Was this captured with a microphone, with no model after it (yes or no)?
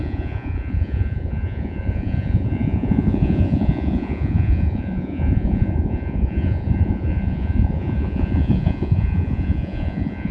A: no